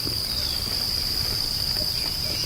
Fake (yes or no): no